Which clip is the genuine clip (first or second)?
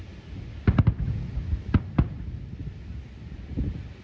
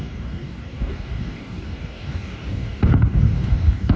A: first